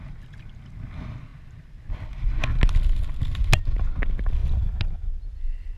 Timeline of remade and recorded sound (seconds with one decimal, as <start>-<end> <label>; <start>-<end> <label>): 0.0-5.8 recorded